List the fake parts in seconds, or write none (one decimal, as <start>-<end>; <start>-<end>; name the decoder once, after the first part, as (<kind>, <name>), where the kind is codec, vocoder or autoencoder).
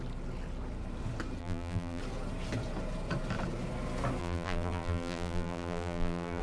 1.4-2.0 (vocoder, BigVGAN v2); 4.2-6.4